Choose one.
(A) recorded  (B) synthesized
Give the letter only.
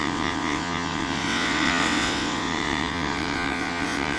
B